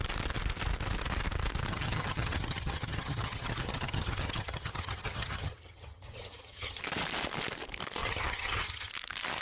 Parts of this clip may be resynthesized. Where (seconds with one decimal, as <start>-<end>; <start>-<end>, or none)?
1.7-6.8; 8.0-8.9